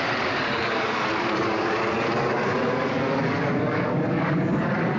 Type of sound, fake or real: fake